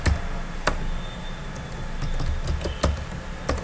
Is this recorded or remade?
recorded